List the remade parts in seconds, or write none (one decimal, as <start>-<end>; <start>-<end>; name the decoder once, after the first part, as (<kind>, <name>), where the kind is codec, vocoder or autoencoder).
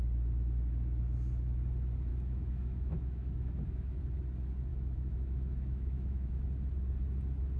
2.1-4.0 (autoencoder, DAC-VAE); 4.7-6.3